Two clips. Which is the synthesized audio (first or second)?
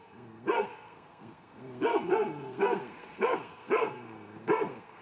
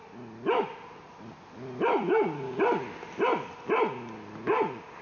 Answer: first